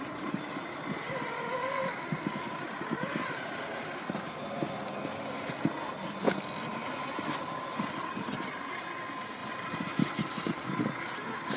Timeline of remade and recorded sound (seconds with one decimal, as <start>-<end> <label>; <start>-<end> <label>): 0.0-6.7 recorded; 6.7-8.4 remade; 8.4-11.6 recorded